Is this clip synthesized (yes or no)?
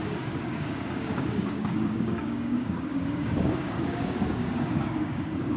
yes